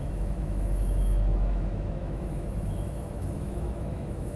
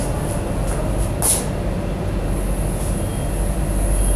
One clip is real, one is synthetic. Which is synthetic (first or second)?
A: first